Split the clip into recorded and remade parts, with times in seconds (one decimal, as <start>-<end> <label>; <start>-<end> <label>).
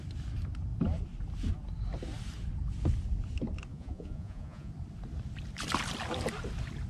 0.0-3.7 recorded; 3.7-4.7 remade; 4.7-6.9 recorded